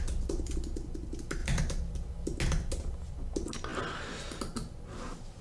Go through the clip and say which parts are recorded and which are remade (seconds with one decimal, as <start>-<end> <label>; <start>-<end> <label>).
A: 0.0-5.4 recorded